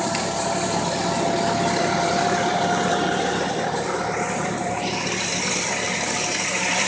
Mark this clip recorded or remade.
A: remade